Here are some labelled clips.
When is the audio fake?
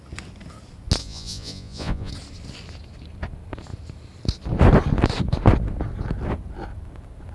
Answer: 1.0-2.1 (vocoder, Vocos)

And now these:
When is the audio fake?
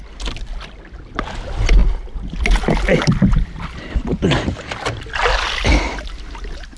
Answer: none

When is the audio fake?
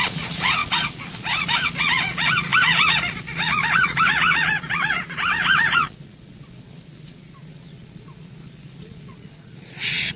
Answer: 0.0-10.2 (vocoder, Vocos)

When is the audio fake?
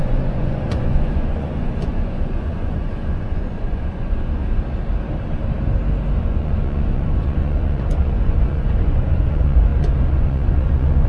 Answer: 0.0-4.4 (vocoder, Vocos); 6.2-11.1